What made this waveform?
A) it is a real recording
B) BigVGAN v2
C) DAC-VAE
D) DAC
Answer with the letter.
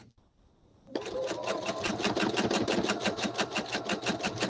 A